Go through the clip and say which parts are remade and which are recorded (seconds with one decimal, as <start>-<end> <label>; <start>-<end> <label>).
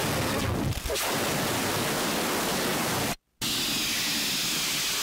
0.0-5.0 recorded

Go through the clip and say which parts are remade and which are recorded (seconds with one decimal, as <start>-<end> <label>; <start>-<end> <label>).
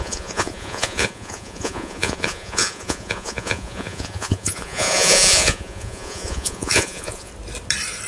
0.0-7.3 remade; 7.3-8.1 recorded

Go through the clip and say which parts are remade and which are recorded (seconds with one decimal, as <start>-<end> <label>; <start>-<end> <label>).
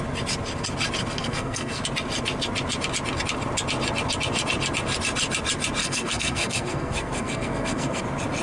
0.0-1.2 recorded; 1.2-1.8 remade; 1.8-5.8 recorded; 5.8-8.0 remade; 8.0-8.4 recorded